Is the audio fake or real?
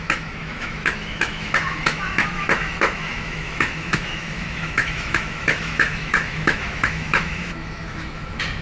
fake